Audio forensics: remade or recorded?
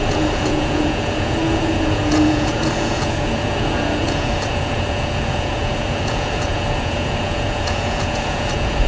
remade